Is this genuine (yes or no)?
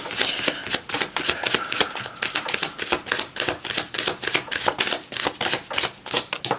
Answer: yes